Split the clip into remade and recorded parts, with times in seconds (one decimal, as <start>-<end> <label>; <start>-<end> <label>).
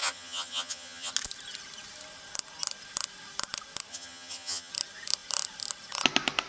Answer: 0.0-1.1 remade; 1.1-3.9 recorded; 3.9-4.7 remade; 4.7-6.5 recorded